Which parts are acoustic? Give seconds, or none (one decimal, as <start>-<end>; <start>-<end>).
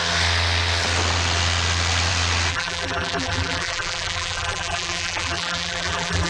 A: 0.0-2.5